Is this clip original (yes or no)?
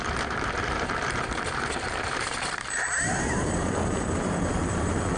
no